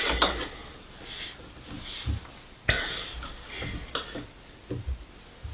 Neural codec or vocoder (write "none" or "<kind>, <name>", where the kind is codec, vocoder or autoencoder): none